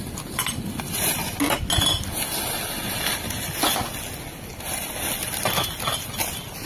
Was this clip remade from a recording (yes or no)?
no